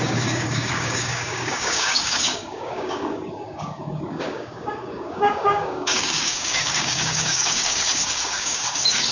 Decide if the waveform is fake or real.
fake